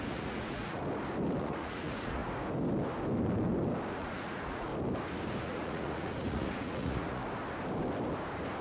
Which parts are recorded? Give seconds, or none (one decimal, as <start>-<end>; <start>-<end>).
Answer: 0.8-1.4; 2.2-3.9; 4.7-5.4; 7.2-8.6